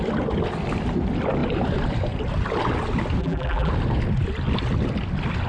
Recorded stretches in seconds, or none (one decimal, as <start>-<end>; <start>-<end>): 0.0-3.2; 3.7-5.5